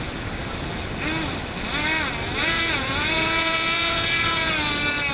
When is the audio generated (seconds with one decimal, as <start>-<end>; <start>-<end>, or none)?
2.4-4.5